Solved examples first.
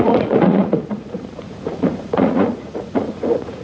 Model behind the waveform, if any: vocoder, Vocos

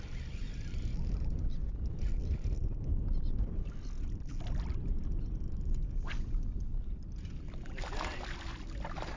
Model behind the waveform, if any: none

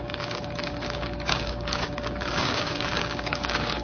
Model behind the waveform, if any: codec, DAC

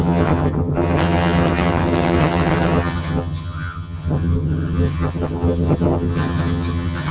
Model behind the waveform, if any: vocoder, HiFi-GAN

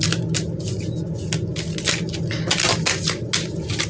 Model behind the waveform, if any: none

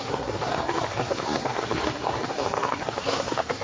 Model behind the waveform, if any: codec, SNAC